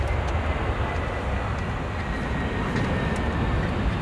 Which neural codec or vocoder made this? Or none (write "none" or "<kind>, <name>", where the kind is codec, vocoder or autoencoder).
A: none